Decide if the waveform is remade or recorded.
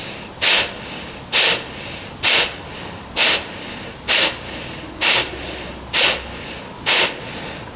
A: recorded